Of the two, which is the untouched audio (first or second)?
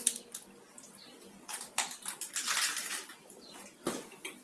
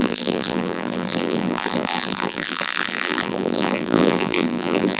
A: first